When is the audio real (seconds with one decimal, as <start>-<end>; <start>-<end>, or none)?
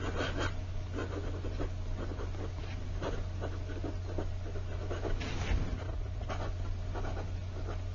0.0-7.9